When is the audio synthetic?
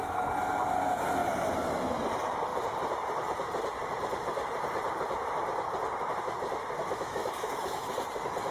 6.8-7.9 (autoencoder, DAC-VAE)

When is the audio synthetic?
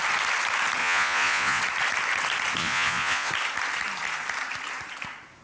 0.8-1.6 (vocoder, Vocos); 2.6-3.3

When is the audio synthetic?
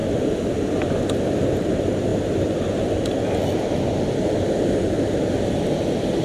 0.7-6.2 (vocoder, BigVGAN v2)